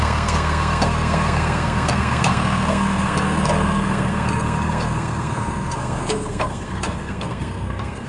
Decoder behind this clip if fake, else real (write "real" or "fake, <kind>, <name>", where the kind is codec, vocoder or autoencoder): fake, codec, SNAC